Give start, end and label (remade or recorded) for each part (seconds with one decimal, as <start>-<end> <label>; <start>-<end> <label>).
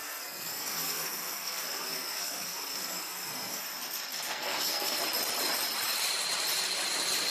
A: 0.0-3.6 remade; 3.6-4.1 recorded; 4.1-5.0 remade; 5.0-7.3 recorded